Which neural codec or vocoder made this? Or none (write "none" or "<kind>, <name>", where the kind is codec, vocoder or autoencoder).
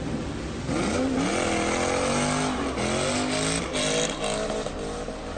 none